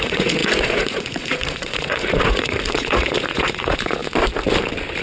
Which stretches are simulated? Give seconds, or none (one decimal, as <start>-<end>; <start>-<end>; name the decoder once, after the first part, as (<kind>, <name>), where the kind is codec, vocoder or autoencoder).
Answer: 0.0-4.0 (vocoder, Vocos)